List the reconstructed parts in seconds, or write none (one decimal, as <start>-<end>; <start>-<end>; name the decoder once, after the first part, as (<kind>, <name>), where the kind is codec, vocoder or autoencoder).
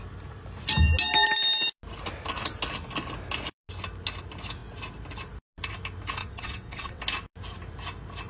6.2-7.0 (vocoder, WaveNeXt)